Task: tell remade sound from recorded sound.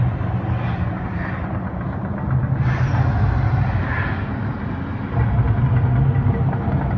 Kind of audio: recorded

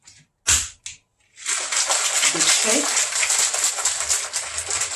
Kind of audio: recorded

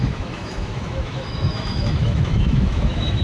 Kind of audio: remade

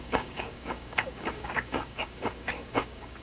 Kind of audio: remade